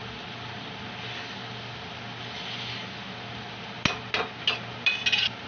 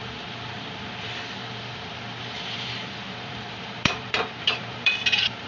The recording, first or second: first